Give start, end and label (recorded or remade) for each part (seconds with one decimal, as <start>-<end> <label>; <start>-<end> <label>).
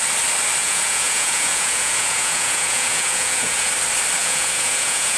0.0-0.6 recorded; 0.6-3.7 remade; 3.7-4.2 recorded; 4.2-5.2 remade